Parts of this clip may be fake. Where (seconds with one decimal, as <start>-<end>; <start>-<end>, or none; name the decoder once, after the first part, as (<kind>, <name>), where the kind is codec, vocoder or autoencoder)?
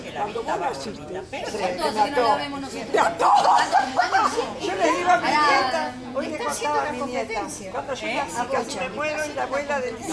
0.0-0.7 (vocoder, Vocos); 1.6-2.2; 4.0-6.5